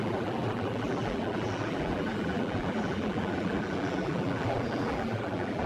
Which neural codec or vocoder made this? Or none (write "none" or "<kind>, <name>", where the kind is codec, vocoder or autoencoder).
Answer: vocoder, BigVGAN v2